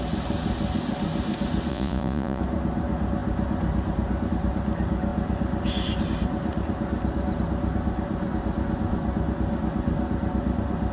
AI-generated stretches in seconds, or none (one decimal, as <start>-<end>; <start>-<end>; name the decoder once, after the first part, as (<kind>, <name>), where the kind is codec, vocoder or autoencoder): 1.7-2.4 (vocoder, Vocos)